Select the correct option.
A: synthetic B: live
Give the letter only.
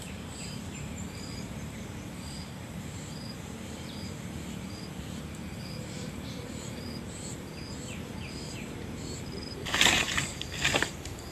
A